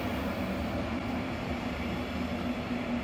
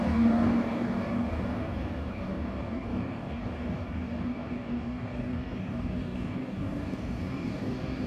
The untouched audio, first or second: first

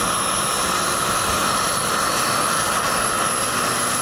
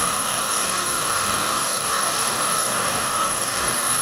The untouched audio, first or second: first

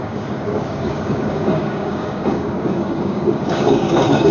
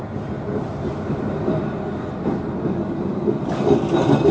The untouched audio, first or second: second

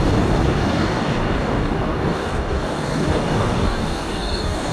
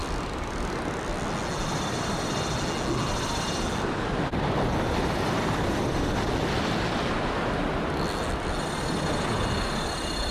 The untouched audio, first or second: second